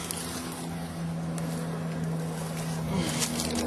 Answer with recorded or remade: recorded